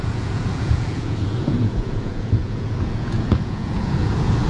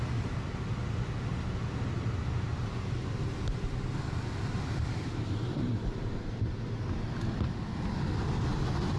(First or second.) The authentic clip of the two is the second